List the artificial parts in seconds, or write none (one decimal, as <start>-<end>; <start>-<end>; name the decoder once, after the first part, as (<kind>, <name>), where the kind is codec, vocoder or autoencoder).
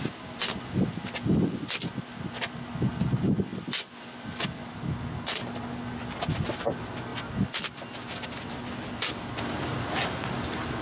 none